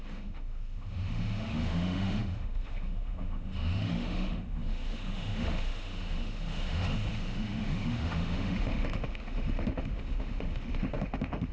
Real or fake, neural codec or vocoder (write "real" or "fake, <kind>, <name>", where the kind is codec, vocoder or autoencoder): fake, autoencoder, DAC-VAE